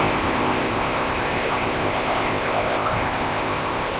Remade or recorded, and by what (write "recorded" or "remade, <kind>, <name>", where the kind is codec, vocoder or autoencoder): remade, codec, ZipCodec